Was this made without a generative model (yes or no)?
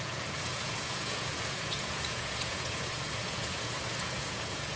no